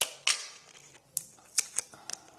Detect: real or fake real